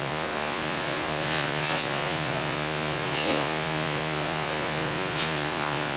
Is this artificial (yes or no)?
yes